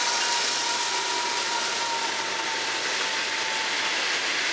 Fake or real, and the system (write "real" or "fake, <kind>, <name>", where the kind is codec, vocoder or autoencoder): real